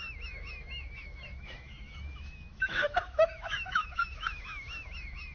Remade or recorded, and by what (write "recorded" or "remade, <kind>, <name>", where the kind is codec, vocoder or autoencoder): remade, autoencoder, DAC-VAE